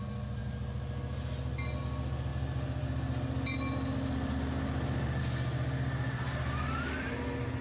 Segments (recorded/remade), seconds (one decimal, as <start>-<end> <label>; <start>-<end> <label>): 0.0-7.6 recorded